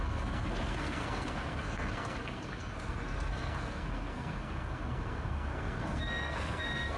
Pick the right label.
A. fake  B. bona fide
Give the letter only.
A